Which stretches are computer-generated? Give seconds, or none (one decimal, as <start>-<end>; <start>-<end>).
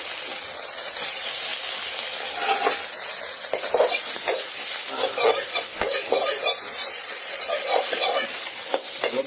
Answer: 6.8-8.6